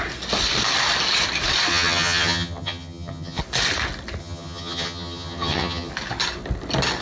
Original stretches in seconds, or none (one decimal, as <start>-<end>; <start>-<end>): 0.0-1.7; 3.4-4.2; 5.9-7.0